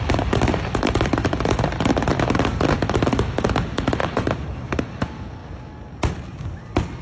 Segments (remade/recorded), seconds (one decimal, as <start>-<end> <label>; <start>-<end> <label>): 0.0-4.0 recorded; 4.0-4.8 remade; 4.8-7.0 recorded